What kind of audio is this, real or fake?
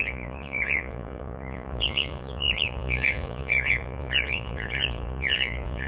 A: fake